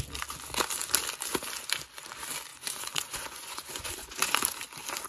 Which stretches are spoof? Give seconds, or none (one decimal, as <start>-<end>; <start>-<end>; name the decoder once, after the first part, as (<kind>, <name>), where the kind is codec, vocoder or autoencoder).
2.5-4.4 (vocoder, Vocos)